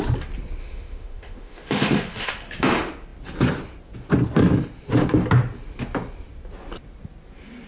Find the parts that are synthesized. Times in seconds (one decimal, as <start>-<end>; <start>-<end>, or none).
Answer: 0.6-2.3